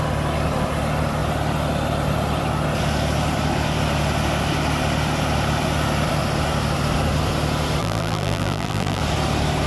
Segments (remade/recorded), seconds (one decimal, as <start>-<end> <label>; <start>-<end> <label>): 0.0-7.8 recorded; 7.8-9.0 remade; 9.0-9.7 recorded